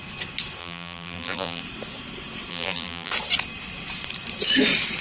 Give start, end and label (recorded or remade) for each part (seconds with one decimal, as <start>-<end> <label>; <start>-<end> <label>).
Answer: 0.0-0.6 recorded; 0.6-1.6 remade; 1.6-2.5 recorded; 2.5-3.1 remade; 3.1-5.0 recorded